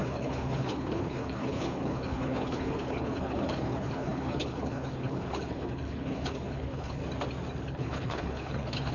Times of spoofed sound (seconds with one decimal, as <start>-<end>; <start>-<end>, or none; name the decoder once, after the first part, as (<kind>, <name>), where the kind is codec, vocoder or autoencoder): 0.0-7.0 (codec, HILCodec); 7.7-8.9